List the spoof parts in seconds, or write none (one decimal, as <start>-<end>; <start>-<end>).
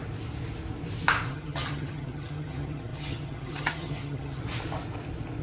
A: 1.3-4.4